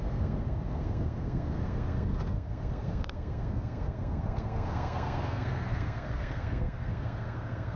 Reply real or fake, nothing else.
fake